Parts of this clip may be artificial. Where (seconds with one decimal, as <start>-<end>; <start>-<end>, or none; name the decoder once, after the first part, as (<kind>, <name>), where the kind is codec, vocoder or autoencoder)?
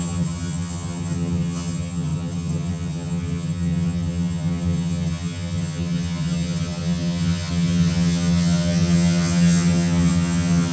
0.0-10.7 (vocoder, HiFi-GAN)